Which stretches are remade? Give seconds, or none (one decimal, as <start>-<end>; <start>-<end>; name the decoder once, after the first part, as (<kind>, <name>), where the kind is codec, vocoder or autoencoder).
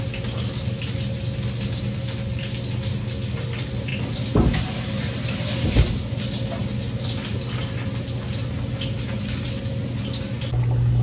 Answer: none